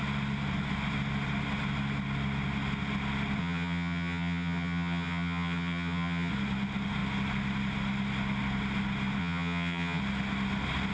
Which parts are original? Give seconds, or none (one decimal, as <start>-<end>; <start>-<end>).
0.0-3.4; 6.3-9.2; 10.0-10.9

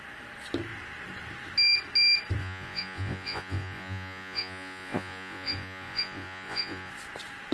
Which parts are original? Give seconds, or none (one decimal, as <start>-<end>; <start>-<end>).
0.0-2.4; 6.9-7.5

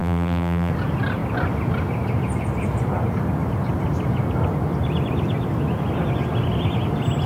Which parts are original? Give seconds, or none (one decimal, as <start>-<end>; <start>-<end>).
0.7-7.3

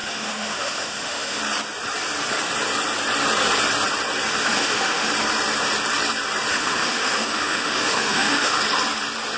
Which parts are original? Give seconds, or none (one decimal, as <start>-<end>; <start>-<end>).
1.4-4.4; 5.1-6.5; 8.6-9.4